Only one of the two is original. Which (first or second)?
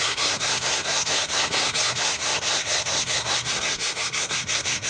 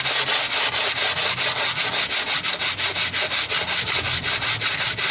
second